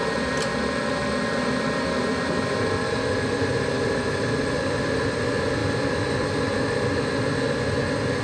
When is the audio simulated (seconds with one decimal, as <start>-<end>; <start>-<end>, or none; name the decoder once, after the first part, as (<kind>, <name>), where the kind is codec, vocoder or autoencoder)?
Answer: none